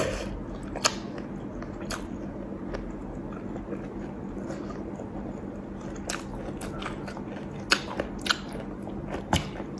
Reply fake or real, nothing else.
real